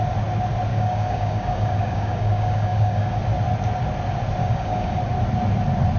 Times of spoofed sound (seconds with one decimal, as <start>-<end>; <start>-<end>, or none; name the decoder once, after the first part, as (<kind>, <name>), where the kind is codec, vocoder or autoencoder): 0.7-3.2 (codec, DAC); 4.4-5.0